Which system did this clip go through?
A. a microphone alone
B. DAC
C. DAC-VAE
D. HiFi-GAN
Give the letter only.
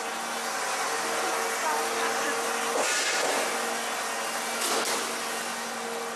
A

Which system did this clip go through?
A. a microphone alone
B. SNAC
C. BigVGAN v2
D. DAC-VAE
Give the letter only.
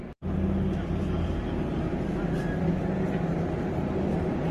A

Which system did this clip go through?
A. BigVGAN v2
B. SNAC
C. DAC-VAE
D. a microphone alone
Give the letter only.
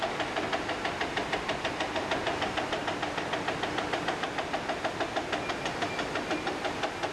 D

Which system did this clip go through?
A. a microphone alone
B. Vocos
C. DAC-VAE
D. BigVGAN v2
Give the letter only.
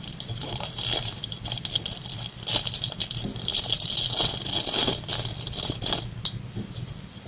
A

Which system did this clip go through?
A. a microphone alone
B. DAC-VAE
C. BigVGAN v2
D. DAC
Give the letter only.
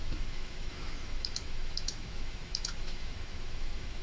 B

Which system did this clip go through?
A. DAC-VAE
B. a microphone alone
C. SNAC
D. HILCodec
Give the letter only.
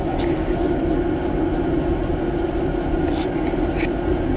B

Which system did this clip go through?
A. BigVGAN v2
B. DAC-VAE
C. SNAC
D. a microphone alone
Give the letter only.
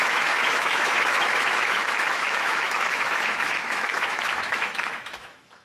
B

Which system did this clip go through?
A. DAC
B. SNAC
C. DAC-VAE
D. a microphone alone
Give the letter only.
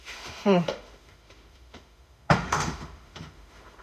C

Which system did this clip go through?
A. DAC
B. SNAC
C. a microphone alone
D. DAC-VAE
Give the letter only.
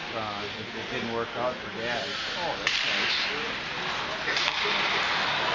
C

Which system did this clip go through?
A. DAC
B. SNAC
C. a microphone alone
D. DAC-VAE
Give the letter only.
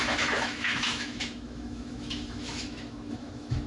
D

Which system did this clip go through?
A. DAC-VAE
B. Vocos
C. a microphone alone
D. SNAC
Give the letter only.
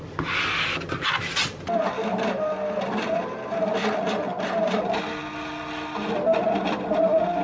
C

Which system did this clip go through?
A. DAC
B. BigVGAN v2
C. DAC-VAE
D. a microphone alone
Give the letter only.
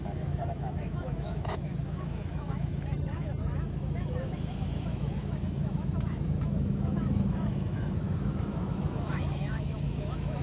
C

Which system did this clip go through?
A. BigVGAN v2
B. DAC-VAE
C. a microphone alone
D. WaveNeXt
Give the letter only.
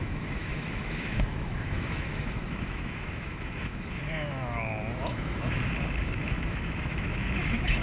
B